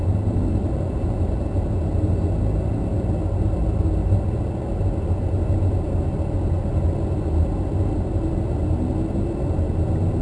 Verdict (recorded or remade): recorded